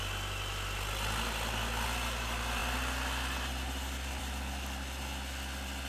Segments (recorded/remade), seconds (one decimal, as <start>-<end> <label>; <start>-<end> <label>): 0.0-5.9 recorded